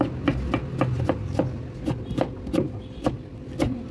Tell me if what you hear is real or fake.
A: real